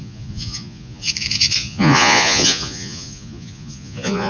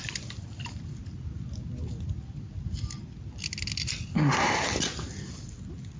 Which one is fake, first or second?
first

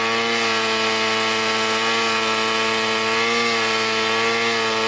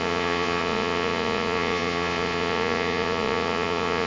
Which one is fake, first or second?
second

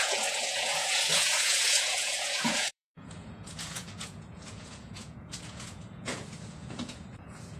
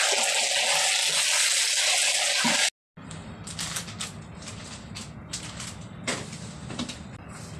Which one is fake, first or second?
first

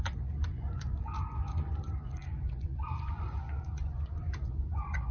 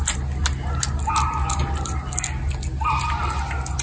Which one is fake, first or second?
first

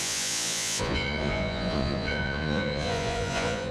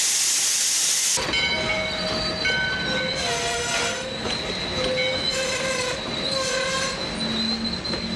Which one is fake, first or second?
first